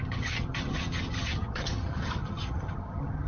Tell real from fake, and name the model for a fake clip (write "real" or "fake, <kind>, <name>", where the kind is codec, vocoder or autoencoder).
fake, vocoder, HiFi-GAN